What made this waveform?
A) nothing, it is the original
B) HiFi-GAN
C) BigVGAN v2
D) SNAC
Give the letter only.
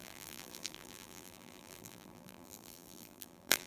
C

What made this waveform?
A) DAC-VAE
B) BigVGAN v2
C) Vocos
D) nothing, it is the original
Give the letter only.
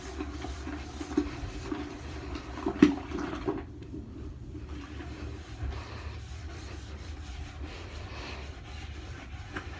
B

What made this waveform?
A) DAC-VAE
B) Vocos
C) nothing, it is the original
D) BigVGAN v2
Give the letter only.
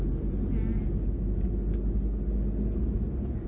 C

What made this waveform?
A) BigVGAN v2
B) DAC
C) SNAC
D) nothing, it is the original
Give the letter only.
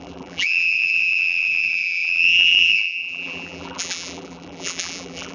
A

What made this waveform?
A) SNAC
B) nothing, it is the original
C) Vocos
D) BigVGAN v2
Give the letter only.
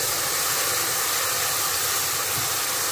D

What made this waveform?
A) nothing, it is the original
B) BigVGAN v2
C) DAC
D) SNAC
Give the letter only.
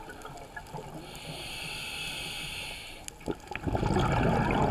A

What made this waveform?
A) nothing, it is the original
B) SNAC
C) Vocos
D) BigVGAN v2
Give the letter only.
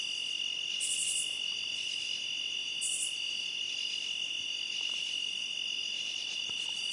A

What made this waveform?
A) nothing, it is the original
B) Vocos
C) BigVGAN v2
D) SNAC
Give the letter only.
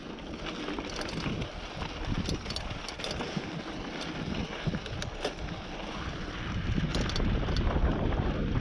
A